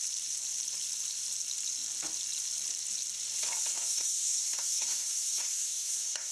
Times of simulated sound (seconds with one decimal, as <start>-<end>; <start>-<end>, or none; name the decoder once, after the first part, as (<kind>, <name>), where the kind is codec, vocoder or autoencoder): 3.7-6.3 (codec, SNAC)